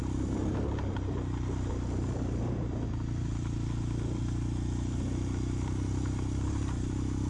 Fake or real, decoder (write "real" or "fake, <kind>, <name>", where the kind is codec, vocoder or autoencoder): real